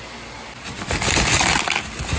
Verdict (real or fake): real